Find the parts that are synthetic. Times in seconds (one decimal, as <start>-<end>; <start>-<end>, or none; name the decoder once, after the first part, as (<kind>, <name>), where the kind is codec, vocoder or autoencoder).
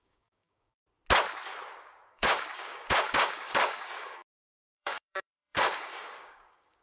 0.0-0.8 (codec, DAC); 2.1-6.8